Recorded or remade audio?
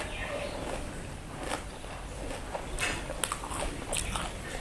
recorded